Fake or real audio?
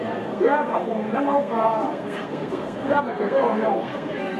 fake